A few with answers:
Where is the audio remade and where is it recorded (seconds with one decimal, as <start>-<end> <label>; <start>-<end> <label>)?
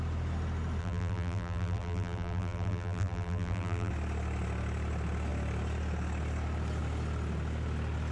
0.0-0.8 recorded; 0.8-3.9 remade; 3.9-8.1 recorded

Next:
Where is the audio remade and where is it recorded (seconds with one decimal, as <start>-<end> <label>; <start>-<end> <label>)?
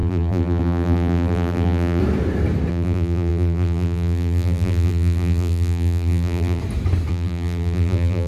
0.0-2.0 remade; 2.0-2.7 recorded; 2.7-6.6 remade; 6.6-7.1 recorded; 7.1-8.3 remade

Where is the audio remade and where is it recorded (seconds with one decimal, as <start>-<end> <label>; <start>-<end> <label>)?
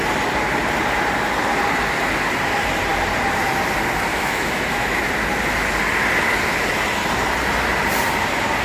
0.0-4.1 recorded; 4.1-5.0 remade; 5.0-8.6 recorded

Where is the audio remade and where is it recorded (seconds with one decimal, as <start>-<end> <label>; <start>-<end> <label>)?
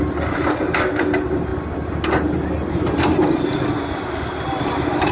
0.0-5.1 recorded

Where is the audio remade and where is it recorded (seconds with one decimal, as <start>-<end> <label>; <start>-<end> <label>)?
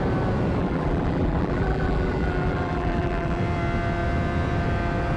0.0-0.6 recorded; 0.6-3.4 remade; 3.4-5.2 recorded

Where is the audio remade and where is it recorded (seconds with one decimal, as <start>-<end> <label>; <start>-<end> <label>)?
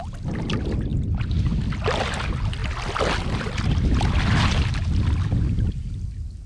0.0-6.5 recorded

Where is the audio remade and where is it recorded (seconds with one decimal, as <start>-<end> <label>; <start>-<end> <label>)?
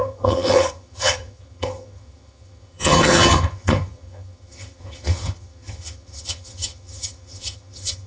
0.0-8.1 remade